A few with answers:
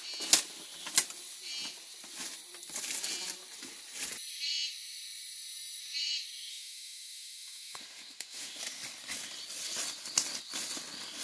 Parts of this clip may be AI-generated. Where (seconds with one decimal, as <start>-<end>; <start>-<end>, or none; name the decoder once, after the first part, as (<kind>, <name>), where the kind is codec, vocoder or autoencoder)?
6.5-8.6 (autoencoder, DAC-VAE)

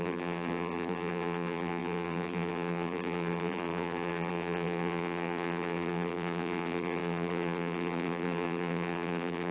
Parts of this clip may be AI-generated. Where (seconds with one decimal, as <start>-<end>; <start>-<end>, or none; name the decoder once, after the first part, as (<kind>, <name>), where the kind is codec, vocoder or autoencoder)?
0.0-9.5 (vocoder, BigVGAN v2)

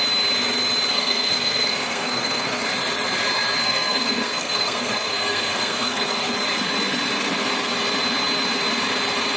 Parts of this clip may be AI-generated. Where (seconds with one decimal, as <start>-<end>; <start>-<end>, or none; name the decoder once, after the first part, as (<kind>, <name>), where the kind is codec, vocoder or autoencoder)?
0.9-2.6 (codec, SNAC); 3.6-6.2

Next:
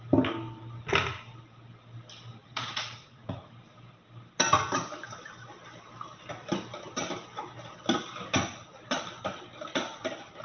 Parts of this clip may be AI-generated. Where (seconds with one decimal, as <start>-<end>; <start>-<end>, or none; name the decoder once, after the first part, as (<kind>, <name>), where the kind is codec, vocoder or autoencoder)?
2.4-3.5 (vocoder, Vocos)

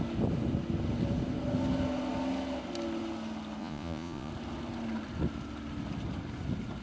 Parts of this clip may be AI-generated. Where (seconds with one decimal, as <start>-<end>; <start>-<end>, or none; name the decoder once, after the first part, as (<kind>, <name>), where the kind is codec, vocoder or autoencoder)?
3.6-4.3 (vocoder, Vocos)